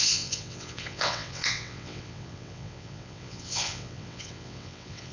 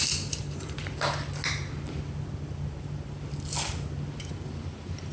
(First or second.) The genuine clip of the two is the second